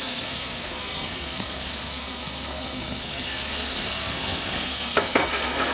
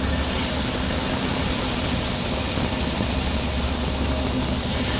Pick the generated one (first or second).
first